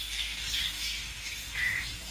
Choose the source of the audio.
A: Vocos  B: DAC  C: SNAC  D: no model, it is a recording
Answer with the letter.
B